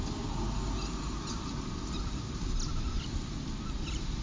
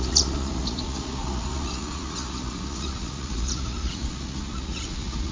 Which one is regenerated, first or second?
second